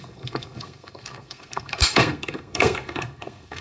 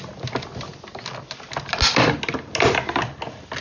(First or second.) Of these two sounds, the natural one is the second